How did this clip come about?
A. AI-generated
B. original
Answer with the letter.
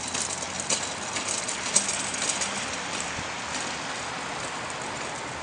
B